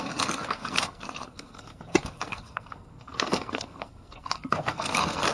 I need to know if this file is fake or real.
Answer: fake